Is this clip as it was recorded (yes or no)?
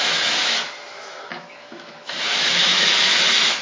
no